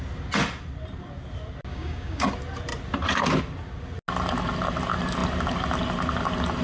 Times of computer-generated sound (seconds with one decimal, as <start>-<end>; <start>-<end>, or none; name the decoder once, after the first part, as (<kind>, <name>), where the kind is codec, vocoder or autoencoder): 1.7-2.3 (codec, DAC)